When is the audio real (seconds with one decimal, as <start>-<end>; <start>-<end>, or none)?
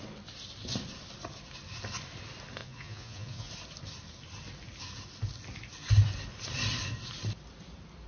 0.0-2.6; 3.5-8.1